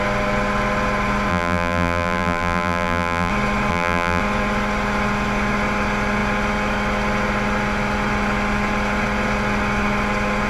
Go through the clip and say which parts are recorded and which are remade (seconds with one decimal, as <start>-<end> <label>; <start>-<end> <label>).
0.0-1.3 recorded; 1.3-3.3 remade; 3.3-3.7 recorded; 3.7-4.2 remade; 4.2-10.5 recorded